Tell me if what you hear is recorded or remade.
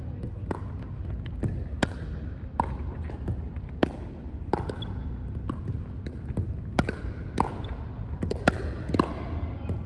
recorded